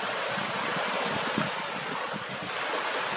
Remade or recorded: recorded